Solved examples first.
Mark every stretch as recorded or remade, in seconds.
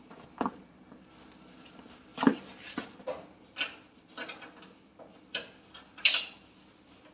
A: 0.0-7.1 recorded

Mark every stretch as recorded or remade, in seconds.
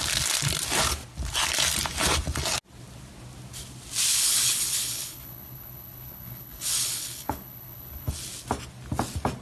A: 0.0-4.1 recorded; 4.1-8.1 remade; 8.1-9.4 recorded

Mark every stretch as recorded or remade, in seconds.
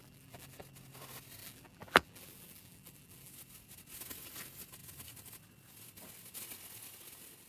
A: 0.0-0.6 remade; 0.6-1.4 recorded; 1.4-3.3 remade; 3.3-7.5 recorded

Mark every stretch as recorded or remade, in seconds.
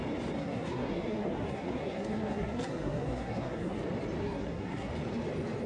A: 0.0-0.4 recorded; 0.4-3.8 remade; 3.8-4.2 recorded; 4.2-4.9 remade; 4.9-5.7 recorded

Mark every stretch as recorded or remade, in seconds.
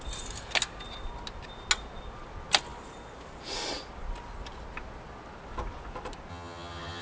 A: 0.0-6.3 recorded; 6.3-7.0 remade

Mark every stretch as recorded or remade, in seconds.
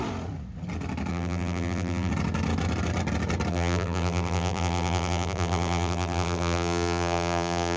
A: 0.0-1.1 recorded; 1.1-2.1 remade; 2.1-3.5 recorded; 3.5-7.8 remade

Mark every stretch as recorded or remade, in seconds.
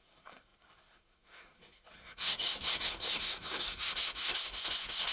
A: 0.0-5.1 remade